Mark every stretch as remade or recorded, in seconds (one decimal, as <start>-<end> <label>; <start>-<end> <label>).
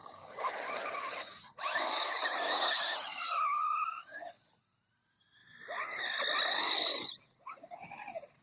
0.0-0.7 remade; 0.7-3.6 recorded; 3.6-4.6 remade; 4.6-8.4 recorded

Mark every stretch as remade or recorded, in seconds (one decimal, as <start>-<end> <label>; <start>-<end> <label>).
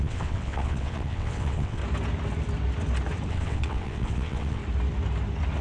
0.0-1.8 remade; 1.8-3.3 recorded; 3.3-4.6 remade; 4.6-5.6 recorded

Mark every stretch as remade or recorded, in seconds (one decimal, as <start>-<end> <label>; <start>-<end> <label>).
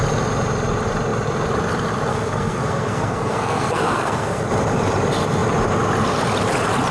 0.0-2.1 recorded; 2.1-4.4 remade; 4.4-6.9 recorded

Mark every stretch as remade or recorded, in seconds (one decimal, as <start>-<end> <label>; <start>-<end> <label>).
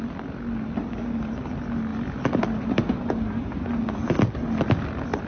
0.0-5.3 recorded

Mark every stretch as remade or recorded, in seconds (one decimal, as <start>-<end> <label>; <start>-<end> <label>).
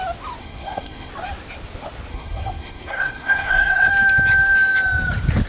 0.0-0.4 recorded; 0.4-1.1 remade; 1.1-2.1 recorded; 2.1-3.9 remade; 3.9-5.5 recorded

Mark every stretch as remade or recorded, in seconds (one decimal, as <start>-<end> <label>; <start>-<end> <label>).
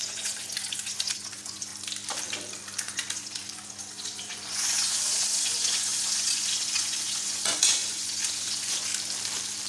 0.0-1.7 remade; 1.7-2.8 recorded; 2.8-8.9 remade; 8.9-9.7 recorded